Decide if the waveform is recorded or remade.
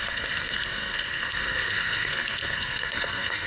remade